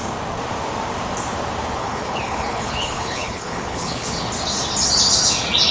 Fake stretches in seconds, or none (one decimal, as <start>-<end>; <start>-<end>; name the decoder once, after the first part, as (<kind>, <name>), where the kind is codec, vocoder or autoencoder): 1.8-4.3 (codec, HILCodec)